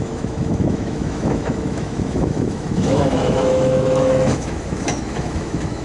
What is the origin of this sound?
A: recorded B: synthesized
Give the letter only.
B